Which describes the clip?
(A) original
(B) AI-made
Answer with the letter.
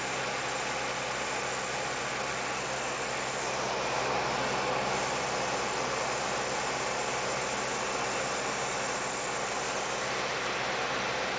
A